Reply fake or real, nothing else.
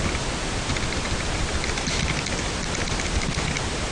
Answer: real